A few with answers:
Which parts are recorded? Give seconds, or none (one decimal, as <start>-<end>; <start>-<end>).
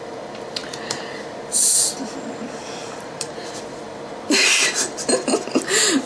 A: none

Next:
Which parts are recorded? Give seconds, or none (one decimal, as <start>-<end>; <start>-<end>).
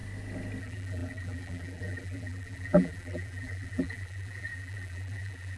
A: 0.0-0.6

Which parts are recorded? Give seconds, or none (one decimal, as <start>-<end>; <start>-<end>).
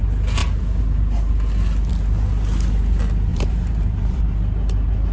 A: 0.0-3.3; 4.2-5.1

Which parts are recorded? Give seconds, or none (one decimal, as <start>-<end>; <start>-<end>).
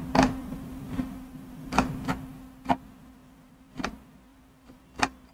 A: 0.0-0.4; 1.9-3.2; 3.9-4.3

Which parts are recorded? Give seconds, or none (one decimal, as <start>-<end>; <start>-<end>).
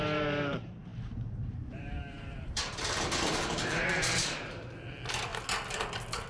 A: 5.3-6.3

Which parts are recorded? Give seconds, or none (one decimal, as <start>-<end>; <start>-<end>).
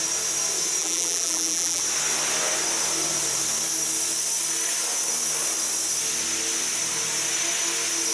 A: 0.0-0.8; 1.8-8.1